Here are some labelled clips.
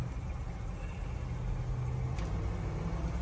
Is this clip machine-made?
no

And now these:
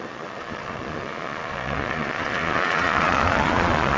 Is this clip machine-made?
yes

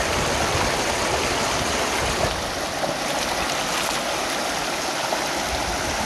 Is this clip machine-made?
no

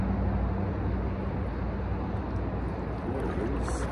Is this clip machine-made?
no